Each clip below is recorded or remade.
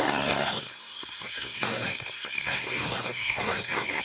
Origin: remade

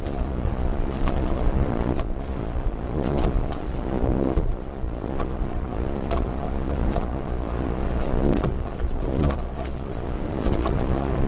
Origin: remade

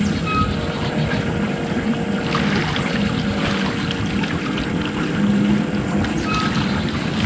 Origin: recorded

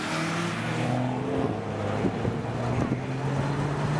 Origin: recorded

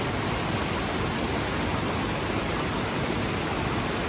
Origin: recorded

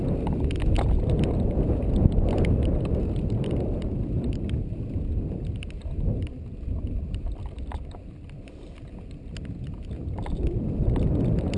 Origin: recorded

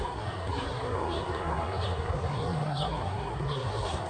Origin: remade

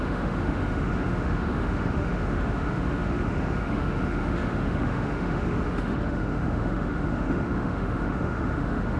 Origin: remade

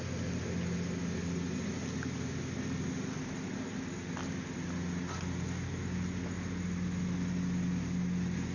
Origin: recorded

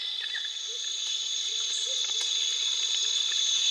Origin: recorded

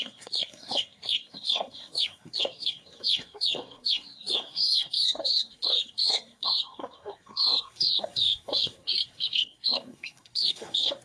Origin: remade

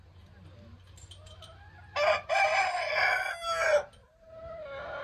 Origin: recorded